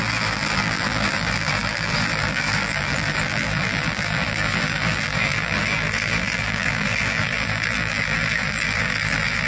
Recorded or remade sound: remade